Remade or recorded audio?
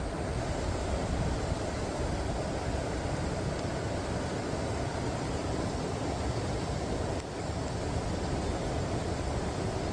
recorded